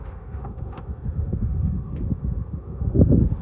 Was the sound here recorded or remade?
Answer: remade